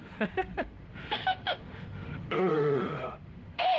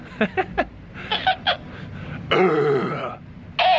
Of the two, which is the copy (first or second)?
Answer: first